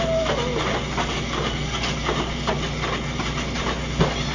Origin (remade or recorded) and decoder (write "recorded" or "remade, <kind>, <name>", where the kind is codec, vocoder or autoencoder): recorded